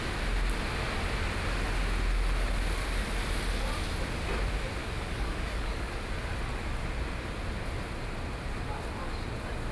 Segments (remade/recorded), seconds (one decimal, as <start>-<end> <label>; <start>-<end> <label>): 0.0-4.8 recorded; 4.8-5.9 remade; 5.9-9.7 recorded